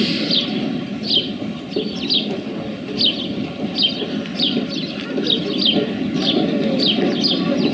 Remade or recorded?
recorded